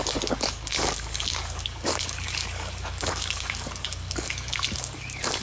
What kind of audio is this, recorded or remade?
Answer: remade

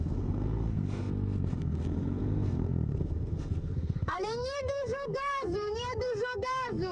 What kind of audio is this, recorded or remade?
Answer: remade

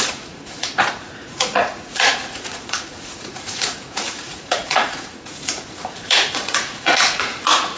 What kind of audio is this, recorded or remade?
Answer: remade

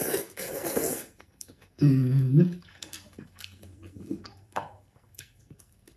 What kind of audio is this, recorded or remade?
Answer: remade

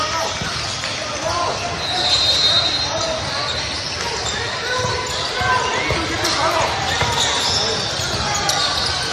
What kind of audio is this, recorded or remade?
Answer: recorded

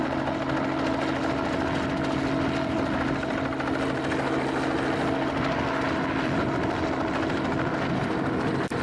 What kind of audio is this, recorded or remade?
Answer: recorded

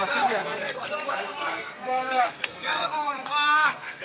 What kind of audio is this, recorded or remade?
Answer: remade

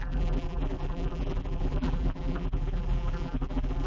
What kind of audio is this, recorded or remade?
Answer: remade